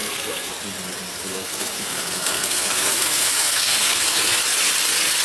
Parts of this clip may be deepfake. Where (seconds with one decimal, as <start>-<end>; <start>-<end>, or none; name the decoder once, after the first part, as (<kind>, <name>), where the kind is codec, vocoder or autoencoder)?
0.0-0.5 (codec, SNAC); 1.3-4.4